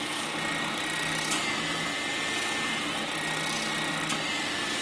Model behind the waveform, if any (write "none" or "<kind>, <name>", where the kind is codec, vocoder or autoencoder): none